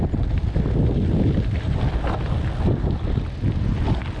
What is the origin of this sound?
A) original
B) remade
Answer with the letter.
A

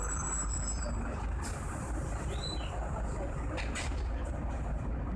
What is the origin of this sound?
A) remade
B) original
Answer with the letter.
B